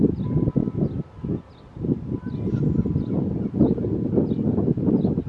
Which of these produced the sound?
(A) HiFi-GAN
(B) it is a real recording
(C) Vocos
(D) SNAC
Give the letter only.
B